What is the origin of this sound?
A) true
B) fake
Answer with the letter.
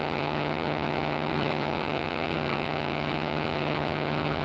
B